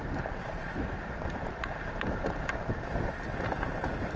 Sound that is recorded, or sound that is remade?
remade